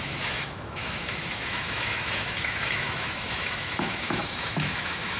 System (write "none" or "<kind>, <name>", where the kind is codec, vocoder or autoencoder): autoencoder, DAC-VAE